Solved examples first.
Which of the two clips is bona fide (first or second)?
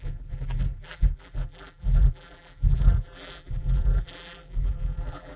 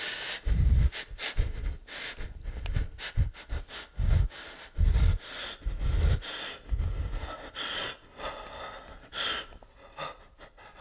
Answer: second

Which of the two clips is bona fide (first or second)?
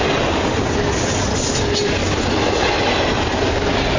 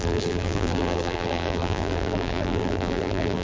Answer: first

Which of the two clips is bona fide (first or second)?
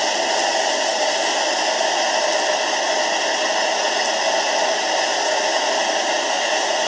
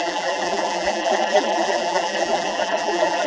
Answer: first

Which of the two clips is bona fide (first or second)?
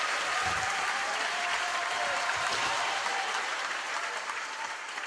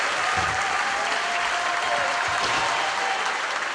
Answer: second